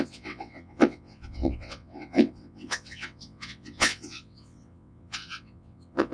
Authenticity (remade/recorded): remade